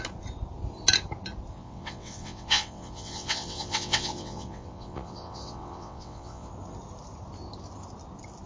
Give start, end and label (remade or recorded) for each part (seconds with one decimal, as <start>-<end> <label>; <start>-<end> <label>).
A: 0.0-1.5 recorded; 1.5-6.5 remade; 6.5-8.5 recorded